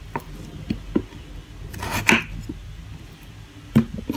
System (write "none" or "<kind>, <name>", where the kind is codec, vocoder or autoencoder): none